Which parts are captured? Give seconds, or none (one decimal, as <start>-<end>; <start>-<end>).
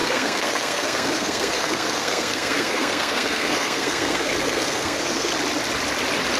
5.3-6.4